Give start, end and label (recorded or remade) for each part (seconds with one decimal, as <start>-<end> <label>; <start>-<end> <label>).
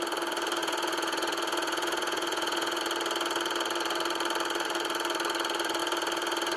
0.0-0.6 recorded; 0.6-2.8 remade; 2.8-6.6 recorded